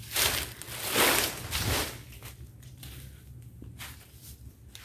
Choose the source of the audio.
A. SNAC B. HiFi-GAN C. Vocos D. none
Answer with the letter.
D